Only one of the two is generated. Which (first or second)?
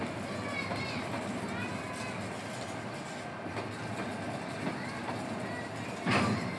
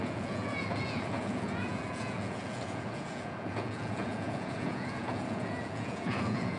second